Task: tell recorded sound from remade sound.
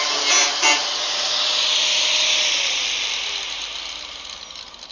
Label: recorded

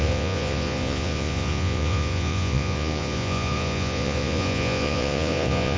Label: remade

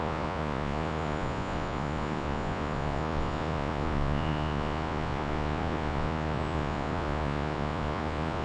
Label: remade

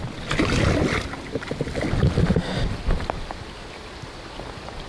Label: recorded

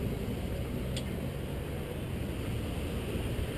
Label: recorded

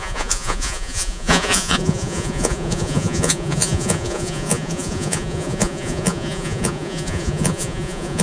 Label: remade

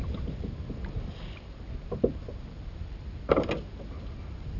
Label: recorded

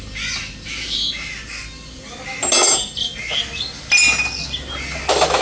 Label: recorded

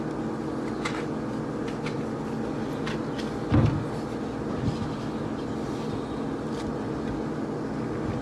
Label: recorded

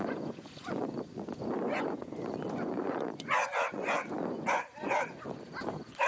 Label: remade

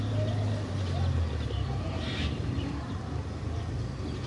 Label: recorded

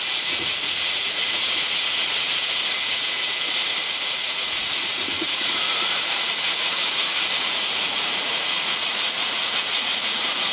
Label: remade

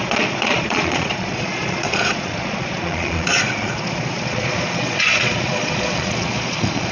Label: remade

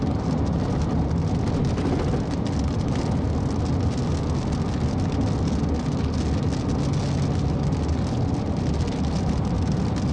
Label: recorded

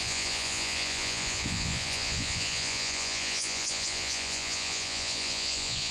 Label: remade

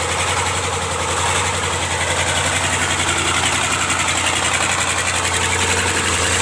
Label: recorded